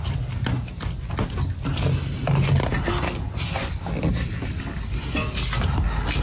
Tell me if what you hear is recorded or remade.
recorded